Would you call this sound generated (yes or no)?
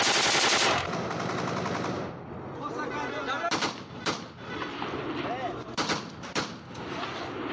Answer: no